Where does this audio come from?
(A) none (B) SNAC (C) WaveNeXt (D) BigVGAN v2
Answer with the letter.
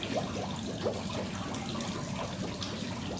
A